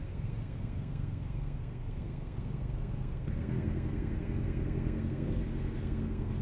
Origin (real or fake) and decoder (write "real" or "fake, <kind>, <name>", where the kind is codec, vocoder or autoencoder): fake, codec, SNAC